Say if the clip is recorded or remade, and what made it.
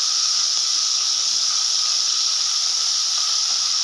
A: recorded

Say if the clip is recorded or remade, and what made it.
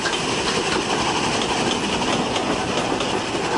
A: recorded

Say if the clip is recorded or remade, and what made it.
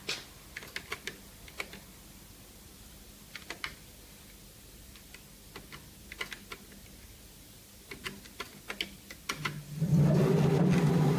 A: recorded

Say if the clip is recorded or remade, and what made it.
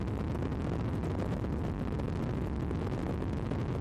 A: recorded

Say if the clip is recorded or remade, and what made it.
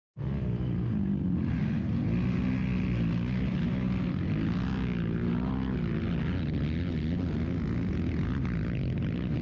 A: recorded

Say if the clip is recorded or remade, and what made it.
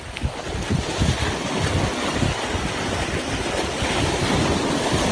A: recorded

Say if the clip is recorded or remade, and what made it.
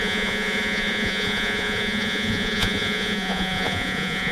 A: remade, vocoder, Vocos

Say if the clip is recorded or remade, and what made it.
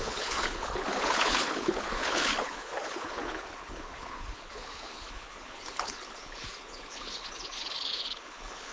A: remade, codec, HILCodec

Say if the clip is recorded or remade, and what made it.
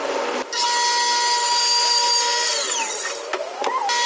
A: recorded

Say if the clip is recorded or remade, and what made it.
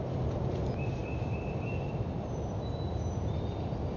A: recorded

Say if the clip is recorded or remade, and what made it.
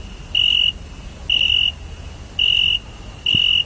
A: recorded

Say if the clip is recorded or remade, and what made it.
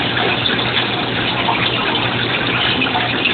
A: recorded